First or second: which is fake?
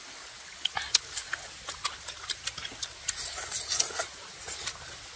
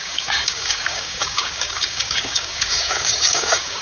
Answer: second